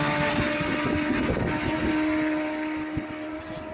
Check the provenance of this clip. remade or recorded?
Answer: recorded